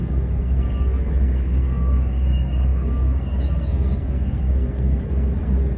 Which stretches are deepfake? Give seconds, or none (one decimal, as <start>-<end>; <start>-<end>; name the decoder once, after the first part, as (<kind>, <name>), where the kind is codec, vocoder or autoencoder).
0.0-5.8 (codec, SNAC)